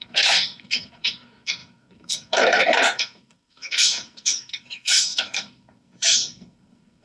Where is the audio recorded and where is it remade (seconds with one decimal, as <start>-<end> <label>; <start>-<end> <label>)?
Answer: 0.0-7.0 remade